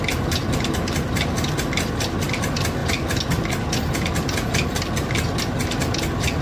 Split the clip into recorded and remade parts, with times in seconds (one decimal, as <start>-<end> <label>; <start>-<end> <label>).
0.0-6.4 recorded